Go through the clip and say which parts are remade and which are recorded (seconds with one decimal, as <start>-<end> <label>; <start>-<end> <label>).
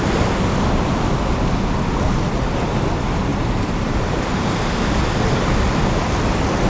0.0-3.3 recorded; 3.3-4.4 remade; 4.4-6.7 recorded